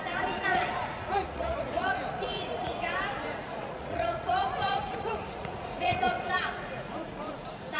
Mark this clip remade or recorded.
remade